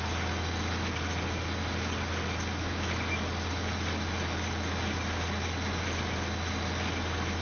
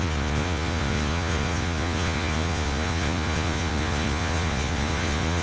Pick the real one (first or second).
first